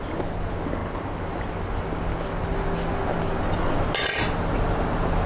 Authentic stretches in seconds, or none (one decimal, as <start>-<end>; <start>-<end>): 0.0-5.3